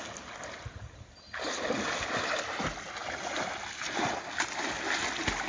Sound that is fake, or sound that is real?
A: real